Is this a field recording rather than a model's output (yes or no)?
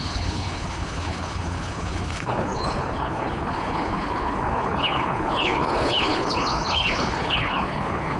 no